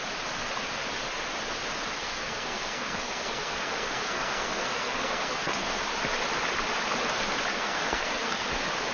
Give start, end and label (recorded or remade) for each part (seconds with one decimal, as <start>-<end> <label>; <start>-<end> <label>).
0.0-2.0 recorded; 2.0-5.8 remade; 5.8-7.5 recorded; 7.5-8.5 remade; 8.5-8.9 recorded

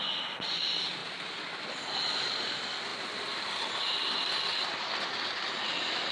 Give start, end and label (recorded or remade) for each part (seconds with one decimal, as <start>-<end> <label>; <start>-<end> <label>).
0.0-6.1 recorded

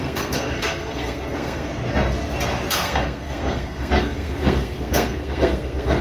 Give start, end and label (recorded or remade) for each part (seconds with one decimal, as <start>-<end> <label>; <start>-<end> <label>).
0.0-1.7 remade; 1.7-2.7 recorded; 2.7-6.0 remade

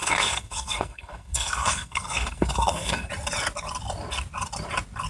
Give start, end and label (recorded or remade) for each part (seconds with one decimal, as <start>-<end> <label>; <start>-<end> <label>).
0.0-3.1 remade; 3.1-5.1 recorded

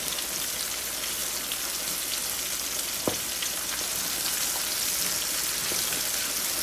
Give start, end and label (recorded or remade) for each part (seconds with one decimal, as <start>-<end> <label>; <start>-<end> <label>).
0.0-6.6 recorded